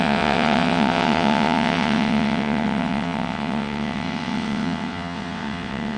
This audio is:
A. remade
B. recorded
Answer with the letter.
A